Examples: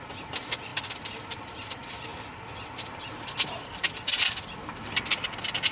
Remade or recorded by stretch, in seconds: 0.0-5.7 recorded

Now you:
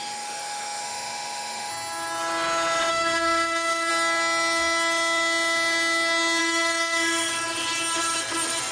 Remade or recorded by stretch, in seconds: 0.0-1.7 remade; 1.7-2.9 recorded; 2.9-3.9 remade; 3.9-6.4 recorded; 6.4-7.3 remade; 7.3-8.7 recorded

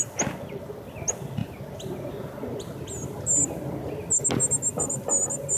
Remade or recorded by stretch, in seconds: 0.0-5.6 recorded

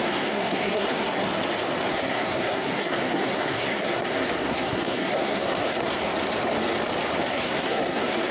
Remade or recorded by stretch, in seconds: 0.0-1.2 remade; 1.2-1.9 recorded; 1.9-6.1 remade; 6.1-7.3 recorded; 7.3-8.3 remade